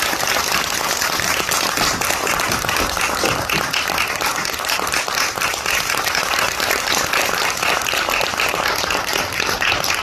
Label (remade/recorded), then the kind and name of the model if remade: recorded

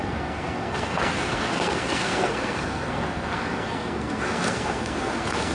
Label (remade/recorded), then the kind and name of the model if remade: remade, codec, SNAC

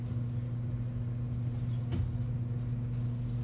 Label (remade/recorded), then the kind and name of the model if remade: recorded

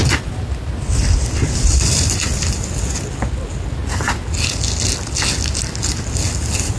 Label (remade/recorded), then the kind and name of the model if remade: recorded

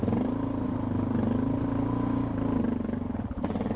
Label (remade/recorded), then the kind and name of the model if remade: recorded